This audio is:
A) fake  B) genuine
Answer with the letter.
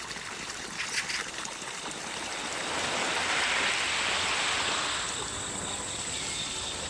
B